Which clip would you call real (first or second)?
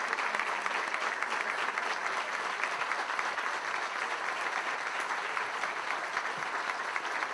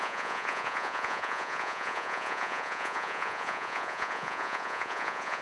first